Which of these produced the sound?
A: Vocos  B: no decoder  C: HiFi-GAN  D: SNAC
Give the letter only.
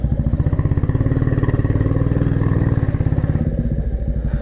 B